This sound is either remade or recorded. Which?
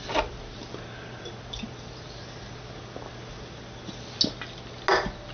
recorded